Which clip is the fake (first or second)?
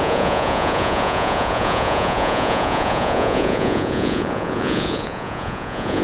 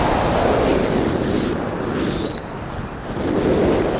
first